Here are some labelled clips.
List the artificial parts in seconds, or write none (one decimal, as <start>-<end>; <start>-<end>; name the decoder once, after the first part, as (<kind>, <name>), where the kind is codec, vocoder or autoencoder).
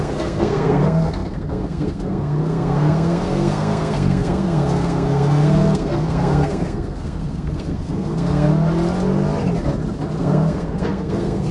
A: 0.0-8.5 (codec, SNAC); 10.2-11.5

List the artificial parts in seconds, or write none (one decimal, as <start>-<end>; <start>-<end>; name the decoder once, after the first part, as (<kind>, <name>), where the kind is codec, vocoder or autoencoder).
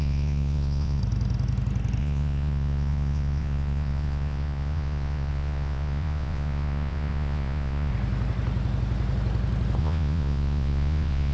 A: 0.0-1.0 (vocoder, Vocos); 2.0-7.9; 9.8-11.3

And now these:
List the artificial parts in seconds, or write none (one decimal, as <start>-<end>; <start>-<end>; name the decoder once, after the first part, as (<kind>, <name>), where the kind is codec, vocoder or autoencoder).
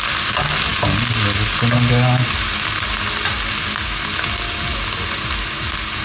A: none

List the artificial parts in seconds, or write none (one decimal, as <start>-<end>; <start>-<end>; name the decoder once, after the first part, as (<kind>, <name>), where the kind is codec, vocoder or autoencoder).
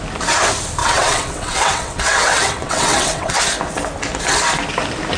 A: 0.8-3.4 (vocoder, WaveNeXt)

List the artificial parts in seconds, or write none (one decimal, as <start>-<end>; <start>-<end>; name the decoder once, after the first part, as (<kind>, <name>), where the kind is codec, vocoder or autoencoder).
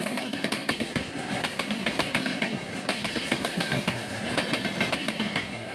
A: 0.0-4.3 (codec, SNAC); 4.9-5.7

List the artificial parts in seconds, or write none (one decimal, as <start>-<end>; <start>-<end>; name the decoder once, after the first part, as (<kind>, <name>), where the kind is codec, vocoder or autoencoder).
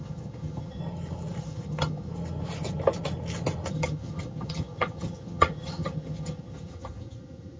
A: 0.0-0.8 (vocoder, HiFi-GAN); 1.4-2.1; 3.7-7.6